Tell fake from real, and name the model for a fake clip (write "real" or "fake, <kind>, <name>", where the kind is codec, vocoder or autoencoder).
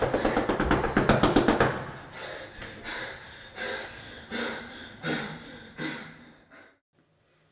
real